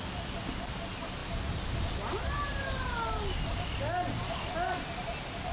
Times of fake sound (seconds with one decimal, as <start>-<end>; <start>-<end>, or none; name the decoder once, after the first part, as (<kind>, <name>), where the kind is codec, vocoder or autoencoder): none